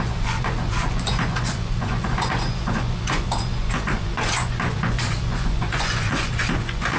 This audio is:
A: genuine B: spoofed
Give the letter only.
B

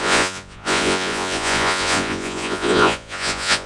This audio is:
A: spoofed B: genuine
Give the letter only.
A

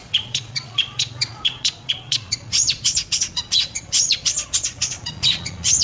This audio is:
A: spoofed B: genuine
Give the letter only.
A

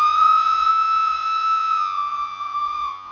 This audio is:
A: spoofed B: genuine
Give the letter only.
A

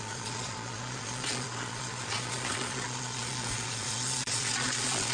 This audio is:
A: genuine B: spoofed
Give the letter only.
B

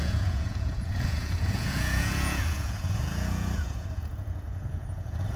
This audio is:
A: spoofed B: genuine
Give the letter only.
A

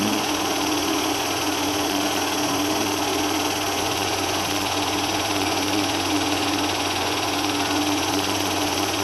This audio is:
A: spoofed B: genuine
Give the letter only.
A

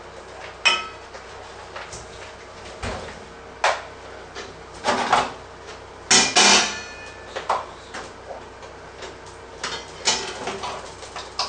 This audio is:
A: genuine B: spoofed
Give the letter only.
A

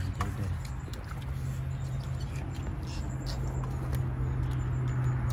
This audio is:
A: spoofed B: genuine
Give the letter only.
B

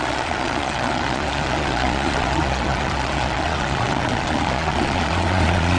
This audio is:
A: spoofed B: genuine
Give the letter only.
A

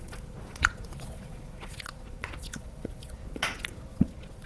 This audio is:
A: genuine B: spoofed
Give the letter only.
B